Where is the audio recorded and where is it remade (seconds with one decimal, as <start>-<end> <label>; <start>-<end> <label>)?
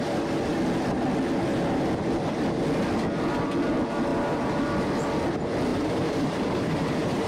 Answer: 0.0-5.7 recorded; 5.7-7.3 remade